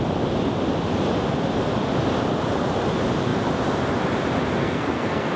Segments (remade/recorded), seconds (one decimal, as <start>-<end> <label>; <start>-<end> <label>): 0.0-4.6 recorded; 4.6-5.4 remade